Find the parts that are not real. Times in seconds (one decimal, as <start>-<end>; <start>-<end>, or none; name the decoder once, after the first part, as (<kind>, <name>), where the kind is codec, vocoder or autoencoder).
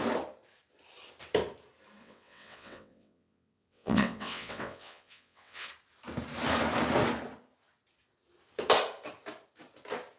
2.0-5.7 (vocoder, WaveNeXt)